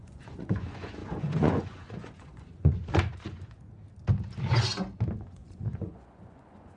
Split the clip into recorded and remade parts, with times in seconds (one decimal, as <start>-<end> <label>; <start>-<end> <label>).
0.0-3.7 remade; 3.7-5.2 recorded; 5.2-6.8 remade